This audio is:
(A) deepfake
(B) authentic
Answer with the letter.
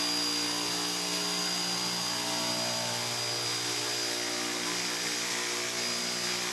B